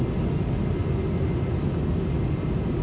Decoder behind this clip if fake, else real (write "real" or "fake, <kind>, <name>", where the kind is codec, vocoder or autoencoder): real